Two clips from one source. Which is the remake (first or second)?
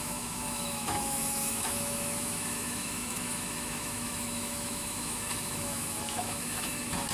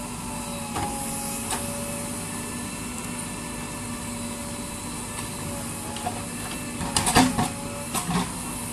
first